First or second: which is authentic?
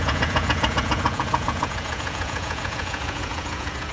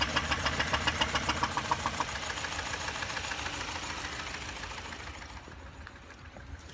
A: second